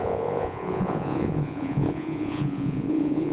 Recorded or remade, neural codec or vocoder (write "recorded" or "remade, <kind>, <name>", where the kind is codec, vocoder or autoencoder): remade, vocoder, Vocos